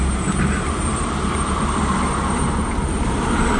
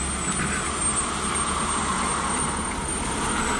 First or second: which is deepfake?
first